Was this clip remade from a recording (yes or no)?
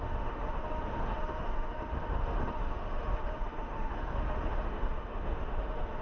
yes